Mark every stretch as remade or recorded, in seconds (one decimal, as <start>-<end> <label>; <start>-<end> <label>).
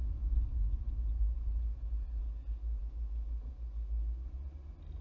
0.0-5.0 recorded